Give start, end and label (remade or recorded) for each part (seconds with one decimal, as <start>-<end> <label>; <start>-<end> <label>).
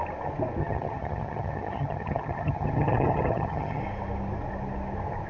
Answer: 0.0-0.6 recorded; 0.6-3.8 remade; 3.8-5.3 recorded